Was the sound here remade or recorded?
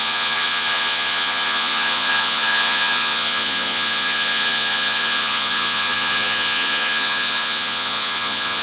remade